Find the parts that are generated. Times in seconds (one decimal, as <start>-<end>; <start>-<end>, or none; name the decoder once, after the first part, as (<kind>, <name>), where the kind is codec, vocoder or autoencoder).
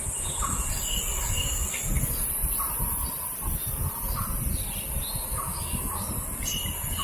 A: 5.3-6.1 (autoencoder, DAC-VAE)